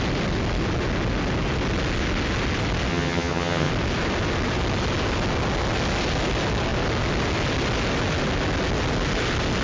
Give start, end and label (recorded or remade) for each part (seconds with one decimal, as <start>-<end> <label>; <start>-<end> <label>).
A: 0.0-2.9 recorded; 2.9-3.7 remade; 3.7-9.6 recorded